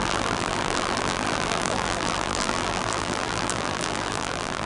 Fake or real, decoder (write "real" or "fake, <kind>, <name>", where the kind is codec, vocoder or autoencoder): fake, vocoder, BigVGAN v2